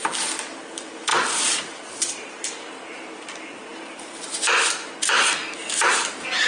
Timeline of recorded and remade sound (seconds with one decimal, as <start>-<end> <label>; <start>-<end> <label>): 0.0-1.1 recorded; 1.1-3.3 remade; 3.3-6.5 recorded